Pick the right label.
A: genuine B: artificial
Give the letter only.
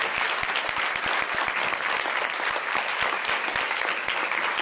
A